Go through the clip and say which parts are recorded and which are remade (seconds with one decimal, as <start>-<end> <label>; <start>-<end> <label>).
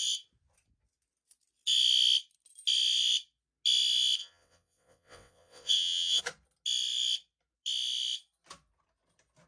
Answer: 0.0-4.2 recorded; 4.2-6.2 remade; 6.2-9.5 recorded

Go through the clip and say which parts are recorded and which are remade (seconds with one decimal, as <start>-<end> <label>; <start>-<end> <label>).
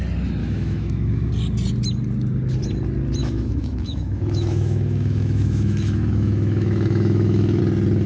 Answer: 0.0-0.4 recorded; 0.4-1.3 remade; 1.3-3.2 recorded; 3.2-7.6 remade; 7.6-8.1 recorded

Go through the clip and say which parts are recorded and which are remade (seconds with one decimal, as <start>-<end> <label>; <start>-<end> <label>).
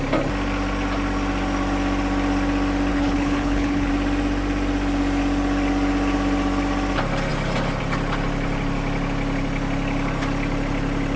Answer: 0.0-2.9 recorded; 2.9-3.9 remade; 3.9-11.2 recorded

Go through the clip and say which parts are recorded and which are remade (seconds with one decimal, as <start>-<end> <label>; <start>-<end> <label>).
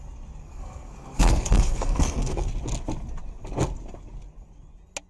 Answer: 0.0-0.4 recorded; 0.4-2.5 remade; 2.5-5.1 recorded